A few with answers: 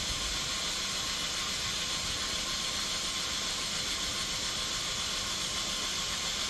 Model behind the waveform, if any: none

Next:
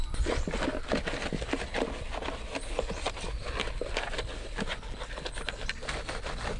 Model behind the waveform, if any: none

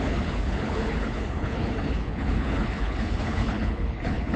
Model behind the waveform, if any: codec, HILCodec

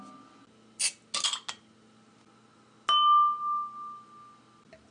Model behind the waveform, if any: none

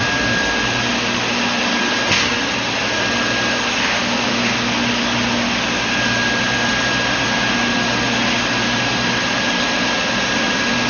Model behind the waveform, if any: none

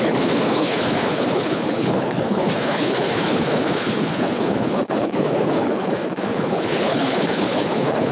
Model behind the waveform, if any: codec, HILCodec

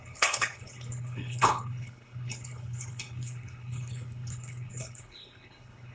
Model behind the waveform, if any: codec, HILCodec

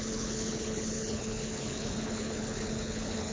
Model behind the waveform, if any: codec, HILCodec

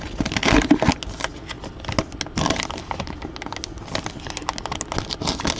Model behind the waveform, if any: none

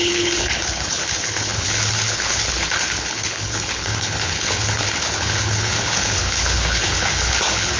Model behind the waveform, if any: codec, HILCodec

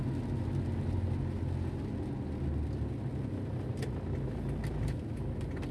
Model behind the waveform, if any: none